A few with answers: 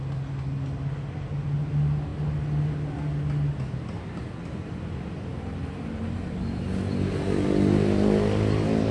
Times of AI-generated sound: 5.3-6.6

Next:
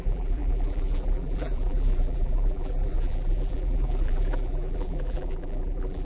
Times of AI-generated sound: 0.0-6.0

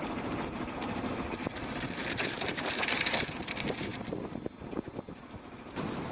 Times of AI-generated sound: 2.0-2.7

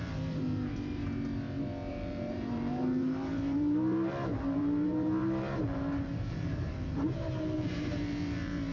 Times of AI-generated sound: 0.0-1.0; 1.9-8.7

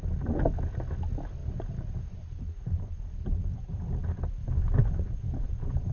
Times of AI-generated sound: 1.4-3.8; 4.4-5.9